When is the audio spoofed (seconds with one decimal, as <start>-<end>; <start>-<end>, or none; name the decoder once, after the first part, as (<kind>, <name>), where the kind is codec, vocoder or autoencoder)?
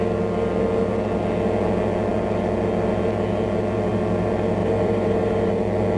4.6-5.5 (vocoder, BigVGAN v2)